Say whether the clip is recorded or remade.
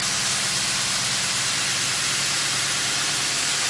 recorded